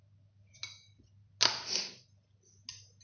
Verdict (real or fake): real